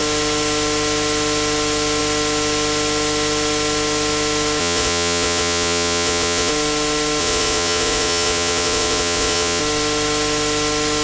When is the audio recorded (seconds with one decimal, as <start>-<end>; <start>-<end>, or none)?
0.0-4.6; 6.5-7.2; 9.6-11.0